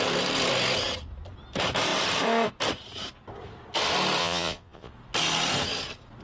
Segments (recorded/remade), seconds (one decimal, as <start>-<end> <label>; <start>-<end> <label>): 0.0-4.2 recorded; 4.2-4.9 remade; 4.9-6.2 recorded